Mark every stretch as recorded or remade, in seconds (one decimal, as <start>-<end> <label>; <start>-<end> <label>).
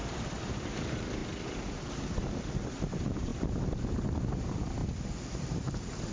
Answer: 0.0-1.2 remade; 1.2-1.7 recorded; 1.7-3.3 remade; 3.3-4.3 recorded; 4.3-4.8 remade; 4.8-5.4 recorded; 5.4-6.1 remade